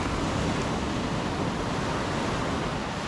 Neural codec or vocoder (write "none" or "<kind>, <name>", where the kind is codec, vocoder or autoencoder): none